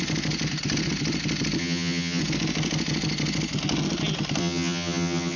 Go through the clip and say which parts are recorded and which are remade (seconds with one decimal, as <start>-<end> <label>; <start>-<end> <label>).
0.0-1.6 recorded; 1.6-2.2 remade; 2.2-4.4 recorded; 4.4-5.4 remade